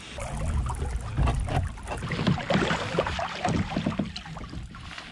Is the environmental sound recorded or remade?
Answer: recorded